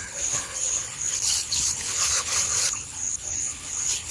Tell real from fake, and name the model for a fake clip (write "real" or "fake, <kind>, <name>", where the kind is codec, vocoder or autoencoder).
fake, codec, HILCodec